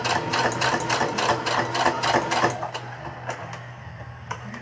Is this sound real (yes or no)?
yes